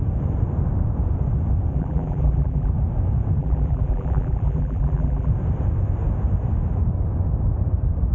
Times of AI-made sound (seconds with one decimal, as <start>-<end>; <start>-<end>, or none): 1.7-2.7; 3.4-5.3